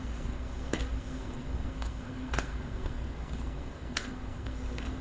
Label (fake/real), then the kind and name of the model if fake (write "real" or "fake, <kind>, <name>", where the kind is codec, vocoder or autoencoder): fake, codec, SNAC